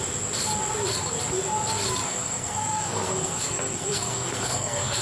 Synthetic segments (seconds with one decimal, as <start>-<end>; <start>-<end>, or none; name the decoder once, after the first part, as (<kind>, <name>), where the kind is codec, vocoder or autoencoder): 2.0-5.0 (codec, SNAC)